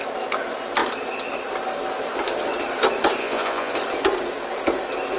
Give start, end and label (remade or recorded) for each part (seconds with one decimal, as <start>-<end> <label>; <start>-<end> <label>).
0.0-3.2 recorded; 3.2-3.7 remade; 3.7-5.2 recorded